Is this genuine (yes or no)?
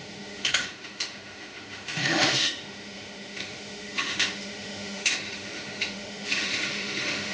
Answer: no